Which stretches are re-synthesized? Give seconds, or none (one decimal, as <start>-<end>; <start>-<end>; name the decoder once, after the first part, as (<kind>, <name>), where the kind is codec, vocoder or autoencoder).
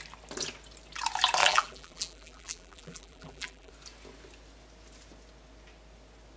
1.4-3.7 (vocoder, BigVGAN v2)